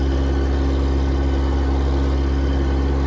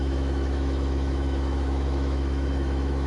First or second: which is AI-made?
second